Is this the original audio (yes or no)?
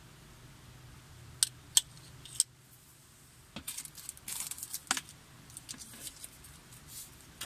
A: yes